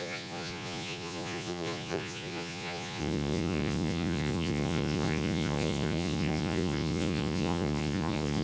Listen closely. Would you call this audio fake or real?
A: fake